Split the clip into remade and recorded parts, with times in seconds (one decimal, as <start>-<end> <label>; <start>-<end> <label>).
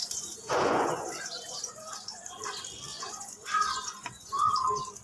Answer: 0.0-2.4 remade; 2.4-2.9 recorded; 2.9-4.5 remade; 4.5-5.0 recorded